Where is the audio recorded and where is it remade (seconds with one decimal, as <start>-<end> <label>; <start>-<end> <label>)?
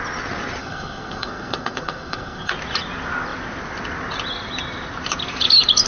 0.0-0.6 recorded; 0.6-2.5 remade; 2.5-5.9 recorded